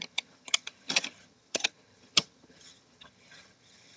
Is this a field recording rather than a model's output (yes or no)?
no